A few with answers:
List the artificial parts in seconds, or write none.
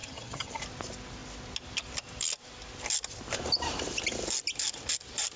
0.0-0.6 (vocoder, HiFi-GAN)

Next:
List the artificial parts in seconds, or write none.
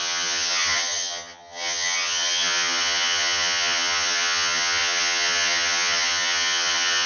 0.0-7.1 (vocoder, HiFi-GAN)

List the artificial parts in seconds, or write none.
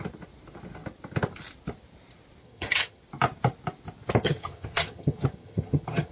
2.4-3.0 (vocoder, HiFi-GAN); 4.2-6.1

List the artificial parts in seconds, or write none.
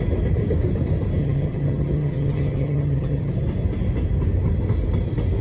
1.2-3.3 (vocoder, HiFi-GAN)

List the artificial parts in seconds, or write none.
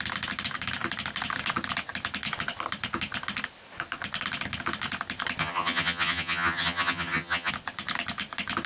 5.4-7.5 (vocoder, HiFi-GAN)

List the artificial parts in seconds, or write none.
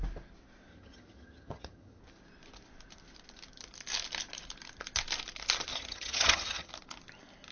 0.7-2.0 (vocoder, HiFi-GAN); 5.7-6.7